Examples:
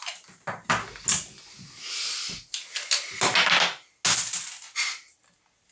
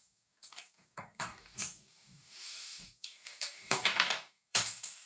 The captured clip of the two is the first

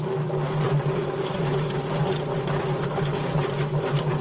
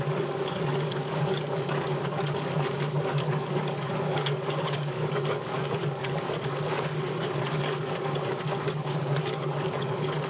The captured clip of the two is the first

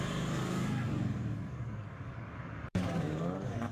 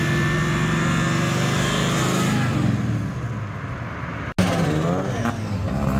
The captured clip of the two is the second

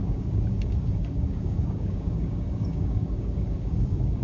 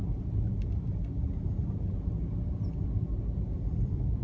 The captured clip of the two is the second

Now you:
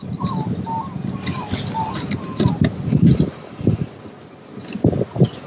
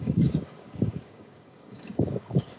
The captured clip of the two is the first